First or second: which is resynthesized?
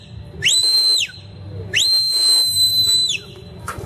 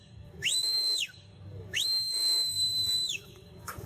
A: second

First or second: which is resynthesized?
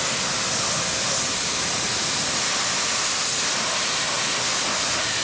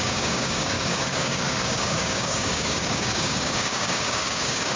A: second